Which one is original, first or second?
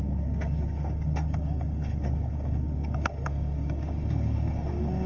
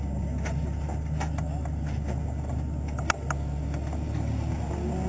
second